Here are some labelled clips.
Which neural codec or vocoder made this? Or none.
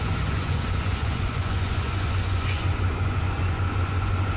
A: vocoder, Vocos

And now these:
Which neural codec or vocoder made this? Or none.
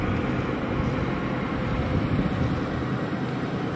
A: none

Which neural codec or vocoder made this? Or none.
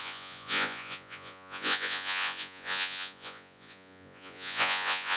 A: vocoder, Vocos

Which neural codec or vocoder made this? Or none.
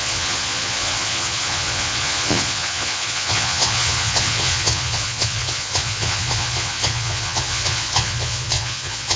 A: vocoder, Vocos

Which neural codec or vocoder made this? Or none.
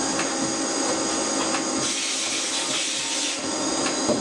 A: none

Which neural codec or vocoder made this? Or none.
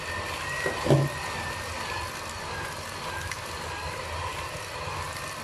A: none